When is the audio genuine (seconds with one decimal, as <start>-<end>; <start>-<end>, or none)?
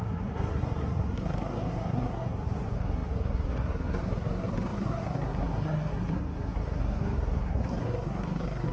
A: none